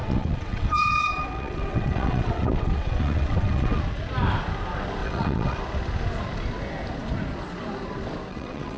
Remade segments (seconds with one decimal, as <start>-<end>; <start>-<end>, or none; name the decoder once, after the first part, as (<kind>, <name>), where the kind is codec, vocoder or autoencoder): 0.0-3.8 (vocoder, WaveNeXt); 5.0-5.6; 8.3-8.8